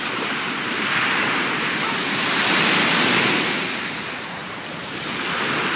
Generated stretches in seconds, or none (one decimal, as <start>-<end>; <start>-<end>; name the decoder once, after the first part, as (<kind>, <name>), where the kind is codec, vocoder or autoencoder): none